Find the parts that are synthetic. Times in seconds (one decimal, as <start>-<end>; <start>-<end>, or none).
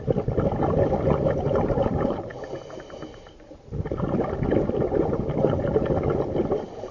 none